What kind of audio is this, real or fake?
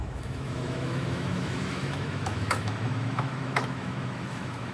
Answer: fake